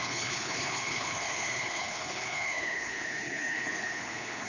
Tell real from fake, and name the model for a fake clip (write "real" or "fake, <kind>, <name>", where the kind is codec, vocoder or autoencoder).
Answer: fake, codec, HILCodec